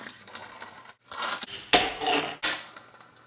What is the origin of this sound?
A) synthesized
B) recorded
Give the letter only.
B